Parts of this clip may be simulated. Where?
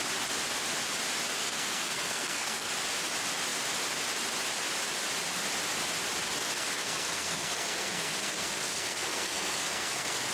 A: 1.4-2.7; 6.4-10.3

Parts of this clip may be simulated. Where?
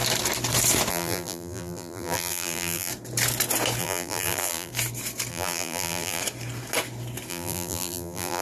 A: 0.9-2.9; 3.8-4.7; 5.3-6.2; 7.3-8.4